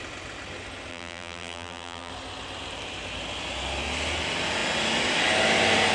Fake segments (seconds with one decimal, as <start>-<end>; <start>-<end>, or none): 0.9-2.1